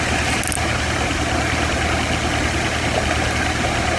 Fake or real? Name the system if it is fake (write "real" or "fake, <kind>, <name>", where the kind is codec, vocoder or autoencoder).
real